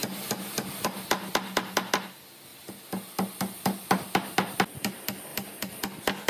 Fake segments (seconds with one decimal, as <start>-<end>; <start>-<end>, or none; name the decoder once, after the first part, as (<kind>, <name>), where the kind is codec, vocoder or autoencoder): 5.3-5.8 (vocoder, BigVGAN v2)